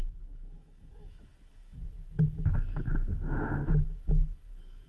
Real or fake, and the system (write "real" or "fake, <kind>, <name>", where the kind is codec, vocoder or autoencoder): fake, autoencoder, DAC-VAE